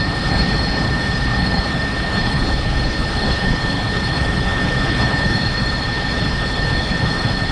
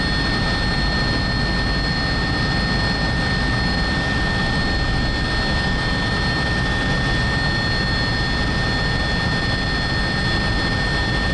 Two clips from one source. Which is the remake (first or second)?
first